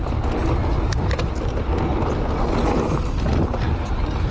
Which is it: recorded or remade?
recorded